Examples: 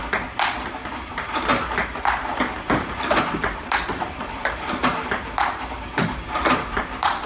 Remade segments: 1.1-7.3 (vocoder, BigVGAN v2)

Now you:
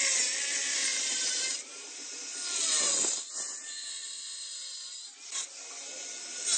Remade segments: none